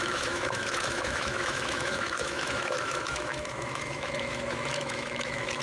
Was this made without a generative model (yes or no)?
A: no